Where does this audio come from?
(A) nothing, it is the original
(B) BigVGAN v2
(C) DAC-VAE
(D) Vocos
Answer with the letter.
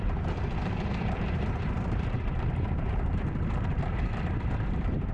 B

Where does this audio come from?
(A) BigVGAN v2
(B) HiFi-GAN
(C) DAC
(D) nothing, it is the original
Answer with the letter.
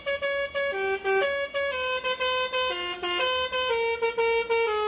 D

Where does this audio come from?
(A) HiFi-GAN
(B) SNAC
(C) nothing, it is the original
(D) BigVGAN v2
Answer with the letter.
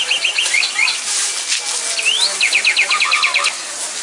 C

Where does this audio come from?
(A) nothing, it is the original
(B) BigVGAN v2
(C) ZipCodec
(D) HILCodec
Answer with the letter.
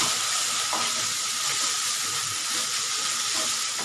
A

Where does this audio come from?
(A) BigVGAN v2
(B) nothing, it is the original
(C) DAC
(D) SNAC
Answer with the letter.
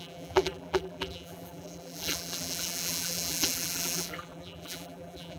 A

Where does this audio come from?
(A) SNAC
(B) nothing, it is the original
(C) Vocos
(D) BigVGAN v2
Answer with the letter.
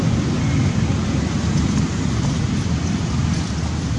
B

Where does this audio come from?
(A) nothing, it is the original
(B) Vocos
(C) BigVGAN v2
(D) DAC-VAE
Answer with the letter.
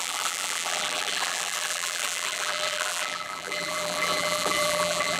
C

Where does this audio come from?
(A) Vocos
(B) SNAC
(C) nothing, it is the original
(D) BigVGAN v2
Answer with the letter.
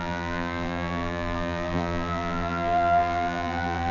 D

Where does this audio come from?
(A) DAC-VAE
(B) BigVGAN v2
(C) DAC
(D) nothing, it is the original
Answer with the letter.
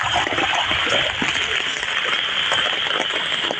D